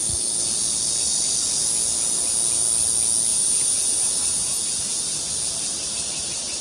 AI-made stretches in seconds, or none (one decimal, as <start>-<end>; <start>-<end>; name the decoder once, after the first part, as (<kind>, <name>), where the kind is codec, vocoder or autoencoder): 3.3-5.3 (vocoder, Vocos)